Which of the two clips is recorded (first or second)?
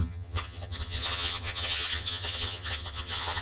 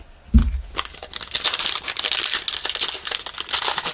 second